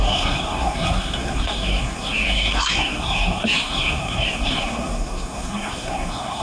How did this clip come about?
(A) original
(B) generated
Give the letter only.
B